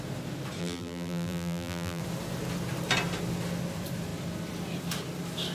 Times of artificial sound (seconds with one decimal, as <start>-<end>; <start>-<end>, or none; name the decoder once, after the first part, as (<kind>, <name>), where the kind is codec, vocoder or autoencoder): 0.6-2.0 (vocoder, BigVGAN v2)